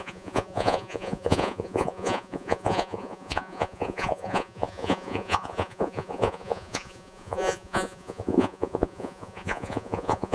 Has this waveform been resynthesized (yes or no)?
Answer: yes